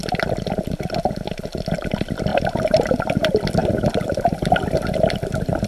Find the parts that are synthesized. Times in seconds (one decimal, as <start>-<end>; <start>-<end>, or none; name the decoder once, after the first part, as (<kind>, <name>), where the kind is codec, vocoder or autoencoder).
2.3-3.1 (vocoder, BigVGAN v2); 3.6-4.4